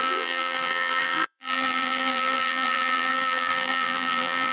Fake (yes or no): yes